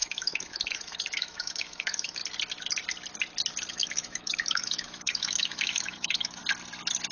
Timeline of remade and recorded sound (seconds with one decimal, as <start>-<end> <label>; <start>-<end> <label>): 0.0-2.2 remade; 2.2-3.7 recorded; 3.7-6.4 remade; 6.4-7.1 recorded